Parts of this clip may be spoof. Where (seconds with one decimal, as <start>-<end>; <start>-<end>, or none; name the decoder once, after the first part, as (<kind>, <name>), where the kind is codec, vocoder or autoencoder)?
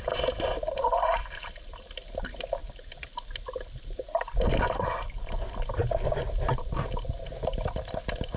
none